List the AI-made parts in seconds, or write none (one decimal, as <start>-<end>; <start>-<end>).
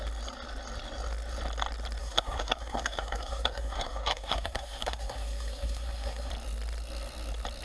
2.0-6.3